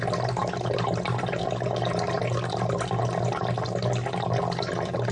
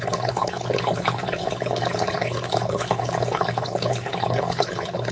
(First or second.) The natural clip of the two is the first